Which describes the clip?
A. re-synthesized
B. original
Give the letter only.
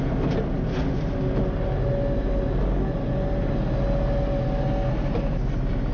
B